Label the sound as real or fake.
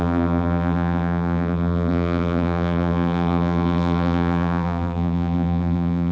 fake